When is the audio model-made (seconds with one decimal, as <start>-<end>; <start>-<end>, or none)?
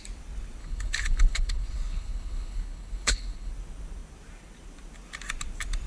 0.6-3.5